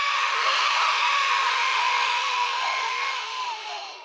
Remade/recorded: remade